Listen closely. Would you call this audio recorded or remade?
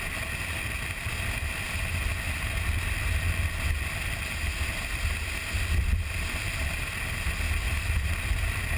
recorded